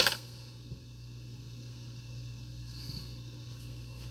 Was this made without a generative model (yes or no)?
no